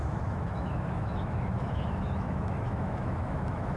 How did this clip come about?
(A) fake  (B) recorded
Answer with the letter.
A